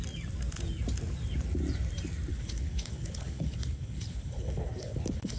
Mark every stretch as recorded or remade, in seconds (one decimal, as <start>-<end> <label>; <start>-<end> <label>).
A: 0.0-2.3 recorded; 2.3-5.4 remade